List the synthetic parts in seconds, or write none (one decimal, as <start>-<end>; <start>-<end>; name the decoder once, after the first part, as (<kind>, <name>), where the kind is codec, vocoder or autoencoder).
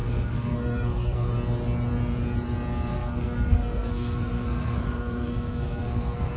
0.0-1.3 (codec, SNAC); 2.9-6.4